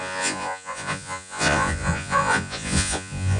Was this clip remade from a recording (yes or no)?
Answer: yes